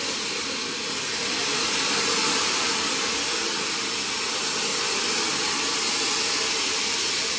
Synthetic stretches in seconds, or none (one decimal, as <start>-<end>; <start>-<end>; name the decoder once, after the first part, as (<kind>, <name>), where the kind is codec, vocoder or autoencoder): none